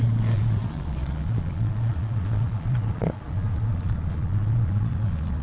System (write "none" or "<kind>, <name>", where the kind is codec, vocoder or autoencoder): vocoder, Vocos